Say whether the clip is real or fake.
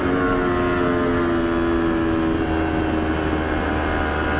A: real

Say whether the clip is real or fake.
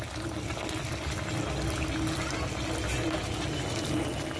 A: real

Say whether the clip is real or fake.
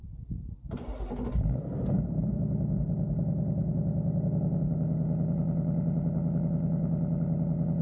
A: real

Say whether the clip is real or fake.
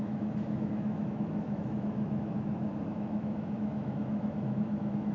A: fake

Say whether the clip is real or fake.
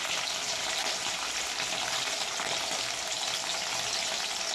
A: real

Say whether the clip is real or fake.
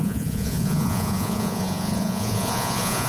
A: fake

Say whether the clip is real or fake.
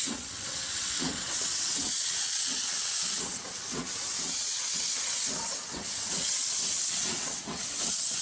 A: fake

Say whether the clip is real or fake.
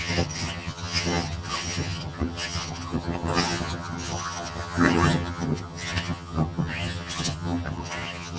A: fake